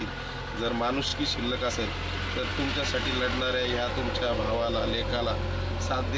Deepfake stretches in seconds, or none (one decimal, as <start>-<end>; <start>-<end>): none